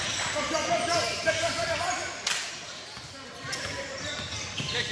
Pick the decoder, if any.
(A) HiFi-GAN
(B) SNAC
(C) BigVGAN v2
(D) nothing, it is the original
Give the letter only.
D